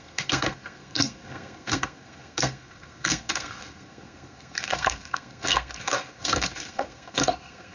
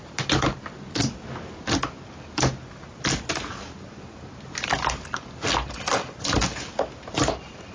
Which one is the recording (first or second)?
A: second